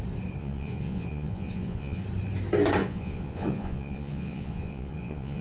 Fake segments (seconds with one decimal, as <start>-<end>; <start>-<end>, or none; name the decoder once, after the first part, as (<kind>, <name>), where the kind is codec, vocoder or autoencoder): 0.4-2.0 (vocoder, Vocos); 2.8-5.4